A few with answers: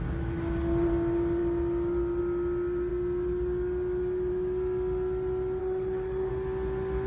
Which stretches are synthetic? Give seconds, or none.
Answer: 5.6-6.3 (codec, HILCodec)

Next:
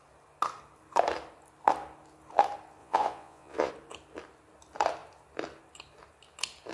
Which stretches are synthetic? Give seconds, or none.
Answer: 2.8-3.7 (vocoder, Vocos)

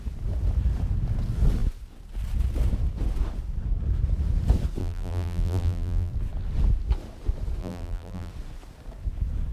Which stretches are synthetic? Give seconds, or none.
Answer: 4.8-6.1 (vocoder, BigVGAN v2); 7.6-8.3

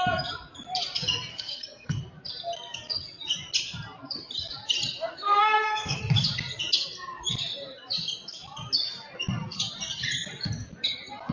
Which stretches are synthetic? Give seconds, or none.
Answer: 1.3-2.0 (codec, SNAC); 5.1-6.0

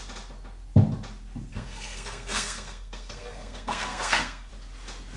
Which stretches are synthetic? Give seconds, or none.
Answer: 1.5-4.5 (codec, SNAC)

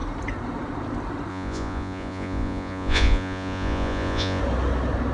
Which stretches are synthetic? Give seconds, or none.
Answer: 1.3-4.4 (vocoder, Vocos)

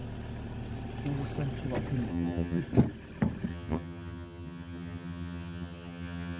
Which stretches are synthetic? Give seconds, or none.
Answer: 2.1-2.6 (vocoder, HiFi-GAN); 3.5-6.4